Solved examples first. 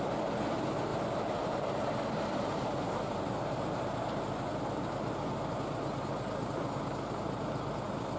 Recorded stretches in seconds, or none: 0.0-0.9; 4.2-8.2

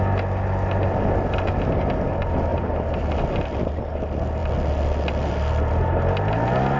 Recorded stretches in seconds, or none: 0.0-2.5; 3.3-6.8